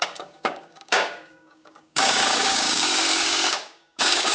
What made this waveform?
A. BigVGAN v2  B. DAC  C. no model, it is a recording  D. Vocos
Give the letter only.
B